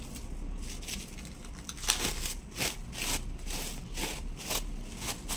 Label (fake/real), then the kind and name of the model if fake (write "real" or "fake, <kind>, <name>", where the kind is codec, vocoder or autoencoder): real